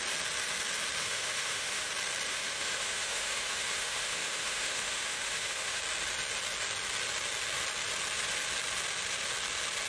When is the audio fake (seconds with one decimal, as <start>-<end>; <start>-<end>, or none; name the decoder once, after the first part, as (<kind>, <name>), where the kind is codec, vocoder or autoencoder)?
1.0-1.9 (autoencoder, DAC-VAE); 2.3-5.8